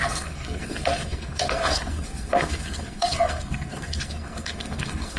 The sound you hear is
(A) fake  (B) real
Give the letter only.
A